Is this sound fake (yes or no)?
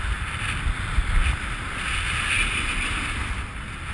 no